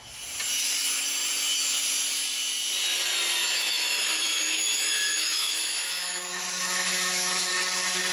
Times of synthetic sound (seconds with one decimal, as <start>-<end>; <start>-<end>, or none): 3.4-7.5

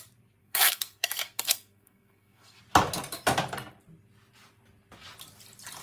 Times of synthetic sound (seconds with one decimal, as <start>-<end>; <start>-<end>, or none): 0.4-2.6

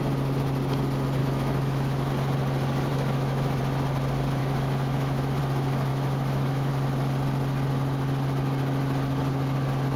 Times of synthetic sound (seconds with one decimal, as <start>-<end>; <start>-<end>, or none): 1.2-2.1; 2.9-3.6; 4.4-5.4; 5.9-6.7

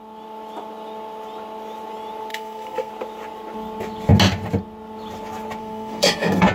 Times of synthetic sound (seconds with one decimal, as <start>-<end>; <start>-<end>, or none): 2.3-2.9; 5.6-6.5

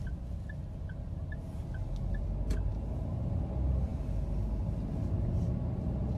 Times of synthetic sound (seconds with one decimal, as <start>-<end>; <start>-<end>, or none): none

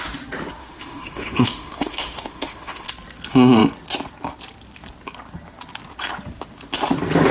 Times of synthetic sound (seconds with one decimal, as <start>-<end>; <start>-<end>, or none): 0.6-2.9